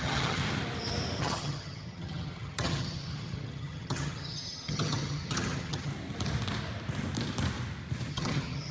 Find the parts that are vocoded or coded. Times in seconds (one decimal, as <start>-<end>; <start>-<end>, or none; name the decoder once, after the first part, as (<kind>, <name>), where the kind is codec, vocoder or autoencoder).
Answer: 0.0-0.4 (vocoder, HiFi-GAN); 1.2-5.9; 8.1-8.7